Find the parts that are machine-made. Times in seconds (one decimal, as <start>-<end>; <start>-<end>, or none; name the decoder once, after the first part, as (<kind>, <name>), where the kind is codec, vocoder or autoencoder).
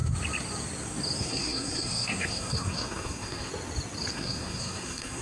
1.2-3.5 (codec, SNAC); 4.1-5.2